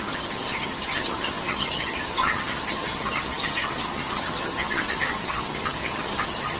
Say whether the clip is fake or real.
fake